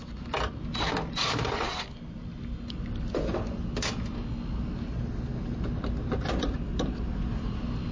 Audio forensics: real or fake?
real